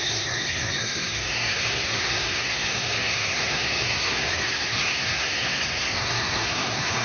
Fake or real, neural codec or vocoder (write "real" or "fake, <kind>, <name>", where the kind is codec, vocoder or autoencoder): fake, codec, SNAC